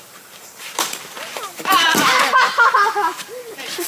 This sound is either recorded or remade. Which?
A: remade